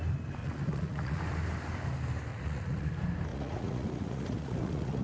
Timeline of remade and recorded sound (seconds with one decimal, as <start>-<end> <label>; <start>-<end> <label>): 0.0-0.4 recorded; 0.4-1.2 remade; 1.2-2.3 recorded; 2.3-2.9 remade; 2.9-3.3 recorded; 3.3-5.0 remade